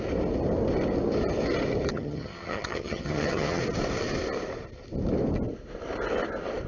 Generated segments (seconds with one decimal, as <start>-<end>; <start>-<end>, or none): 1.9-3.6